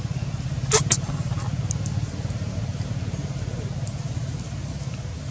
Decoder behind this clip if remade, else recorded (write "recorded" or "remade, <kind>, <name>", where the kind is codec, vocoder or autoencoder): recorded